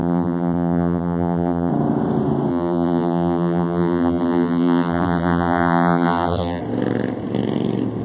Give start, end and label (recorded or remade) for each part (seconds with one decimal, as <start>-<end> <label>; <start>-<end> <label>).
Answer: 0.0-1.7 remade; 1.7-2.5 recorded; 2.5-6.6 remade; 6.6-8.0 recorded